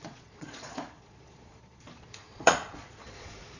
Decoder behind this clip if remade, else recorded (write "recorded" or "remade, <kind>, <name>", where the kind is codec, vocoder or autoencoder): remade, vocoder, Vocos